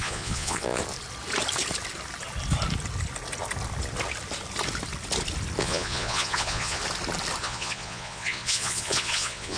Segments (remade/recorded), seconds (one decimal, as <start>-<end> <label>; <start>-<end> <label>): 0.0-0.8 remade; 0.8-5.6 recorded; 5.6-6.8 remade; 6.8-7.4 recorded; 7.4-9.6 remade